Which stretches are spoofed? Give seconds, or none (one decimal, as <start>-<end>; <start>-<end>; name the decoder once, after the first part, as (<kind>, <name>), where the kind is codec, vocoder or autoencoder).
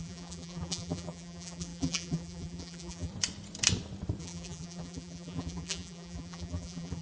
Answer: 0.0-3.1 (vocoder, BigVGAN v2); 4.2-7.0